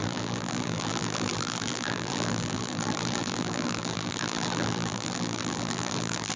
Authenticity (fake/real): fake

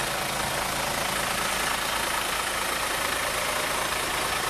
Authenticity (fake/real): real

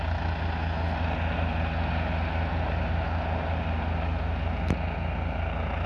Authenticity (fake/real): real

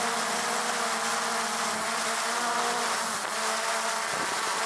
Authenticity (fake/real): real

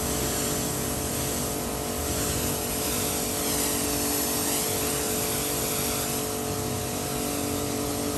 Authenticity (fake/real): real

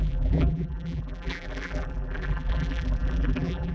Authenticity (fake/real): fake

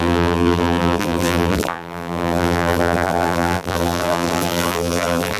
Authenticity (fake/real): fake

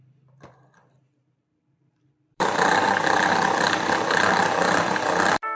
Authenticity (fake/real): fake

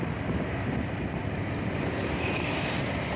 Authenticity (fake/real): fake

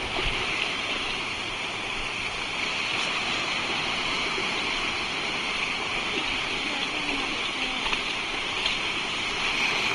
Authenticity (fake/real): real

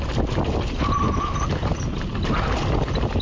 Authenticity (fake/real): real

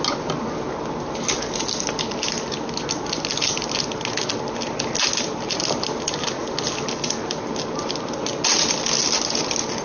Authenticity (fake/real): real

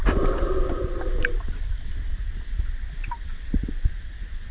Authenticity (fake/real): real